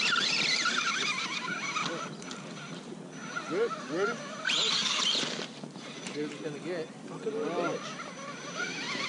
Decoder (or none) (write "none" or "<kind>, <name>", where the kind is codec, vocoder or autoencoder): none